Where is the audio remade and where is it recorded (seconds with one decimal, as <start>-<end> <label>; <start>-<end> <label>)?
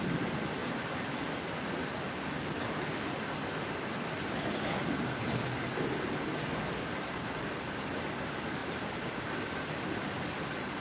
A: 0.0-10.8 recorded